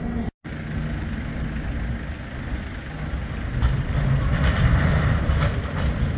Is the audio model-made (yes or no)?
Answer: no